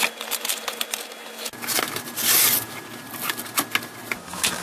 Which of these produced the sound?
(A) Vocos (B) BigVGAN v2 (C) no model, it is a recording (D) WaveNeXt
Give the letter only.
C